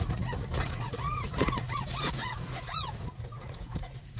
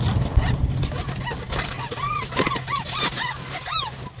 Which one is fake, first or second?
first